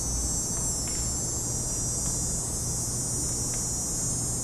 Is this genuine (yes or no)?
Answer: yes